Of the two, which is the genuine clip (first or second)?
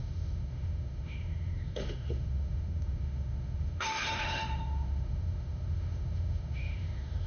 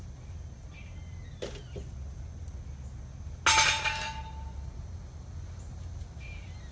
second